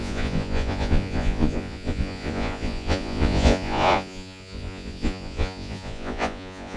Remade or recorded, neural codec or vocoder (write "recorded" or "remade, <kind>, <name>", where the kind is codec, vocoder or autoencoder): remade, vocoder, Vocos